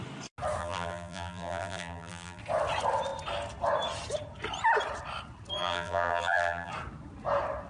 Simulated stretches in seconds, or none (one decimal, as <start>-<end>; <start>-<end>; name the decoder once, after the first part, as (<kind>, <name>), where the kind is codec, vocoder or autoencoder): 0.6-2.4 (vocoder, BigVGAN v2); 5.6-6.7